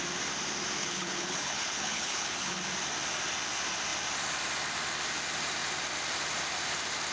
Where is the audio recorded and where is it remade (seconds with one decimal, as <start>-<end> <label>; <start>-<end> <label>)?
0.0-0.8 recorded; 0.8-2.6 remade; 2.6-7.1 recorded